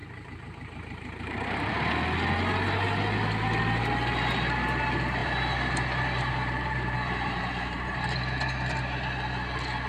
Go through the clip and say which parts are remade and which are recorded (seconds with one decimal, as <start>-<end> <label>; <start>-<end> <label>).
0.0-1.7 remade; 1.7-5.2 recorded; 5.2-8.0 remade; 8.0-9.9 recorded